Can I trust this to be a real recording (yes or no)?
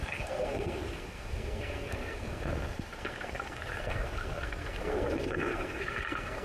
no